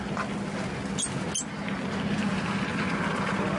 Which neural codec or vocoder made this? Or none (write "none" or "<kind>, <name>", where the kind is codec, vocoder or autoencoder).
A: none